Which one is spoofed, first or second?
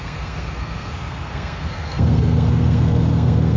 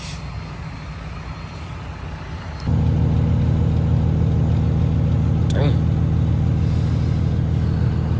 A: first